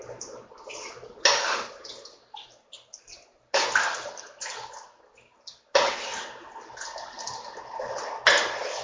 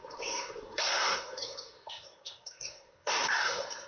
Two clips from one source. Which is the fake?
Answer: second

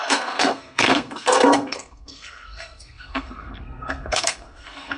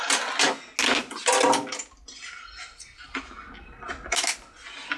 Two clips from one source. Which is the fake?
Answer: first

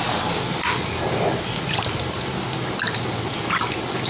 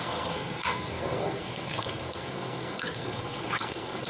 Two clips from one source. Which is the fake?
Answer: second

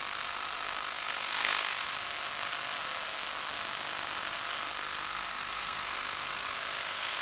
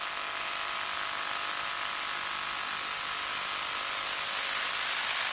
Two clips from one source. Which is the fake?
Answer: first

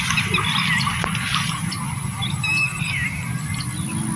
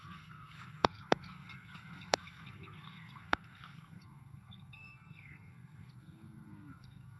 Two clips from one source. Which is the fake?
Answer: second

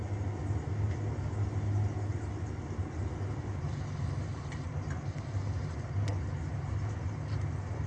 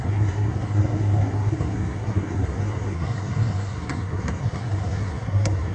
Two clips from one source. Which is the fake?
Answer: second